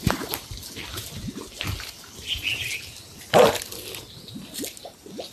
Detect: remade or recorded recorded